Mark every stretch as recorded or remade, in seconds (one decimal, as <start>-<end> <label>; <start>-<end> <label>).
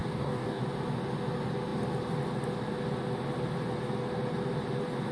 0.0-0.6 remade; 0.6-5.1 recorded